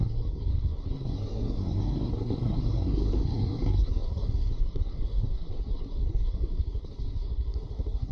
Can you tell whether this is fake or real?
fake